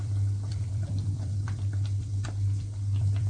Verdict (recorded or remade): remade